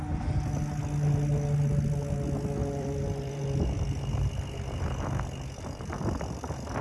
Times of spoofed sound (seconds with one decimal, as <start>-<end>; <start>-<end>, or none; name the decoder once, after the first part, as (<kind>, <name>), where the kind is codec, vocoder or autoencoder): 2.6-3.4 (vocoder, BigVGAN v2)